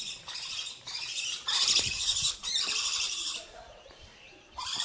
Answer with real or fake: fake